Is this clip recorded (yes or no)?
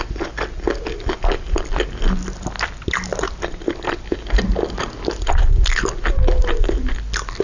yes